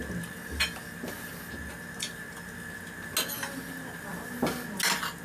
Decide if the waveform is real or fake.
real